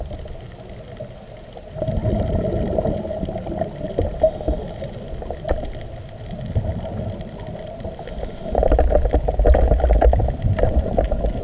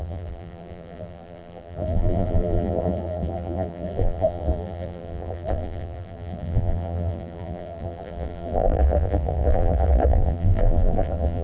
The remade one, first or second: second